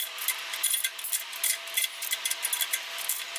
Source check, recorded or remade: recorded